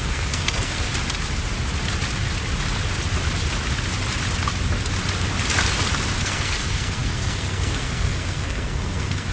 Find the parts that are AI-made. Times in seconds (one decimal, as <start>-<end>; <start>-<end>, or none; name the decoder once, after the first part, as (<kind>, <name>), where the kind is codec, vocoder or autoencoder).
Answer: 0.0-0.9 (codec, SNAC); 6.2-9.3